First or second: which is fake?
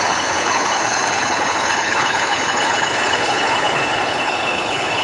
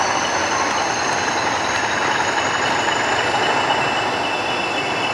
first